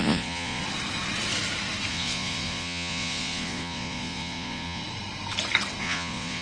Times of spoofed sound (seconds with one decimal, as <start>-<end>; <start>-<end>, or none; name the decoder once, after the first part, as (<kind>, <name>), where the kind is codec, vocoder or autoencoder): 0.0-0.6 (vocoder, Vocos); 1.9-4.8; 5.8-6.4